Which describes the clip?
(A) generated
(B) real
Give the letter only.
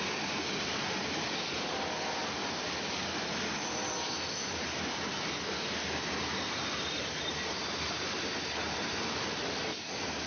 B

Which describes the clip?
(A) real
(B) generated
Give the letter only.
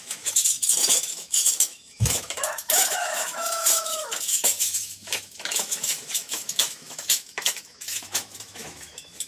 B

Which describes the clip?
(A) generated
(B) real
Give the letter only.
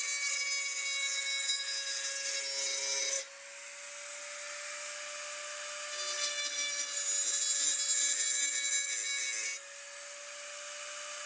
B